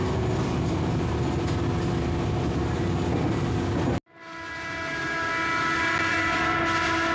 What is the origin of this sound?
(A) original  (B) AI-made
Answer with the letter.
A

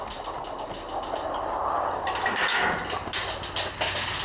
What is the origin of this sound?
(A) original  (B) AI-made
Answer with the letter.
A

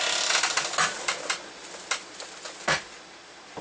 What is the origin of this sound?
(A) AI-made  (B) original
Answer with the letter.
B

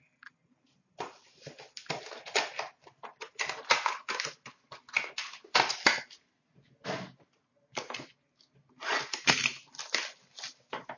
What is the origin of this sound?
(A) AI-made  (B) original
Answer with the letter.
B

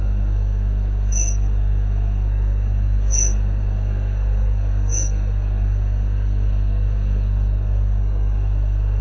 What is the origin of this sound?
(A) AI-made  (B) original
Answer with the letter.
A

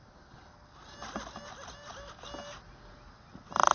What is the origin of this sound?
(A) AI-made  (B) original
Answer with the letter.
B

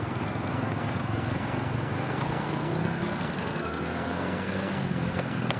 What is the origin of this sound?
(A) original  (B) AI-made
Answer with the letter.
B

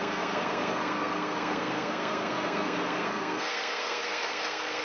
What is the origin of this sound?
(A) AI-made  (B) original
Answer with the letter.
A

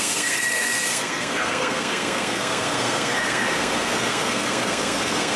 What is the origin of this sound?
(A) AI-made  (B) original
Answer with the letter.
A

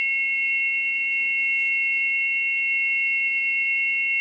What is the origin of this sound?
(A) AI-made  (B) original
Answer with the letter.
B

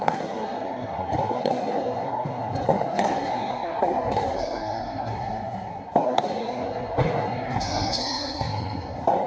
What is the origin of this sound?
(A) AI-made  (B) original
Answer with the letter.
A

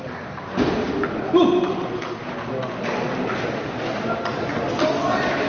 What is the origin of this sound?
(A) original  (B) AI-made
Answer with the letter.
A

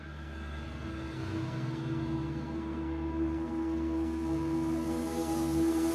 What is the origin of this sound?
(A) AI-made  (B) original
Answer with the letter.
A